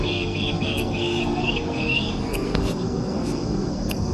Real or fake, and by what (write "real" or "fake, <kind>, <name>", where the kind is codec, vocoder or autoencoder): fake, codec, SNAC